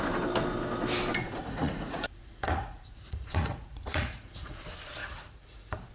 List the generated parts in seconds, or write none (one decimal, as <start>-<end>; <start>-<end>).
1.1-4.6; 5.0-5.9